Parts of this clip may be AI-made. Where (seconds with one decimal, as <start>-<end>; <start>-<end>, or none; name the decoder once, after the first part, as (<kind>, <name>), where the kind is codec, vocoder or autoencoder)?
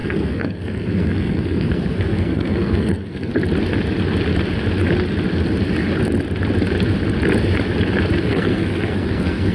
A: 0.0-3.3 (codec, SNAC); 8.2-9.5